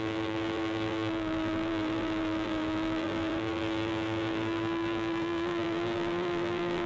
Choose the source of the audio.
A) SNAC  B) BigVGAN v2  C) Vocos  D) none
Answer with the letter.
B